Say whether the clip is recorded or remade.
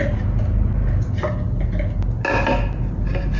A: recorded